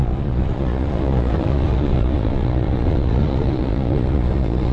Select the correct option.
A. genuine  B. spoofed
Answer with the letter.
B